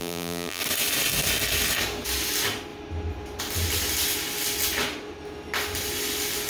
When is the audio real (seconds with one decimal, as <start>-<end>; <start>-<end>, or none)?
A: 0.6-6.5